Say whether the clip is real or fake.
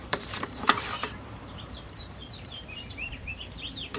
fake